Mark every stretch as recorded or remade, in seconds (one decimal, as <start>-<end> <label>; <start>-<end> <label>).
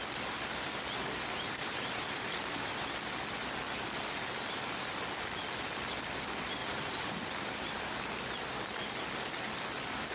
0.0-1.3 recorded; 1.3-2.7 remade; 2.7-6.6 recorded; 6.6-8.0 remade; 8.0-10.1 recorded